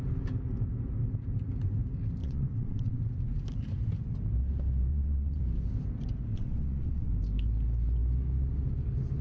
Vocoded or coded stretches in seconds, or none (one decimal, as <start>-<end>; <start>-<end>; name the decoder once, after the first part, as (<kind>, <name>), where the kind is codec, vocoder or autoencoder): 2.2-3.0 (vocoder, WaveNeXt); 4.9-5.4; 6.3-7.1